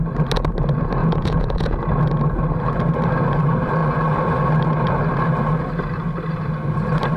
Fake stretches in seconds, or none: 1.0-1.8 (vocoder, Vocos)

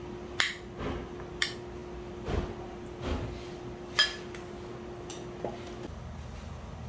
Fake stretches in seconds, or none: none